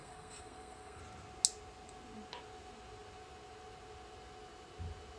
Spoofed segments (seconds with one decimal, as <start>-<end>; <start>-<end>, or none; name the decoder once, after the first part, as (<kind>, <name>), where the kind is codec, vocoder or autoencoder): 0.0-1.0 (codec, SNAC)